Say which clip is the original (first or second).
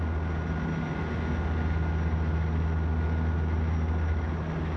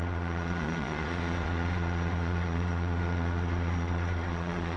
first